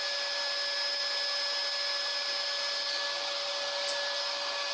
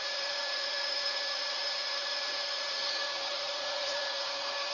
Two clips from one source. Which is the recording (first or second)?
first